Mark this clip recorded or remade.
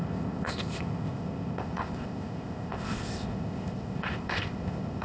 remade